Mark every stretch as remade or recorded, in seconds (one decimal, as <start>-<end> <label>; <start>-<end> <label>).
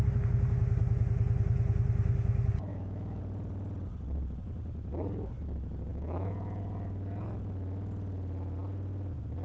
0.0-2.7 recorded; 2.7-3.2 remade; 3.2-5.9 recorded; 5.9-6.6 remade; 6.6-9.4 recorded